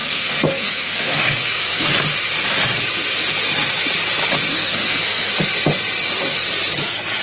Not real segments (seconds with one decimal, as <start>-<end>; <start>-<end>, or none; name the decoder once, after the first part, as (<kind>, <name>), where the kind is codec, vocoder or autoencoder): 0.0-1.9 (codec, SNAC); 4.5-5.3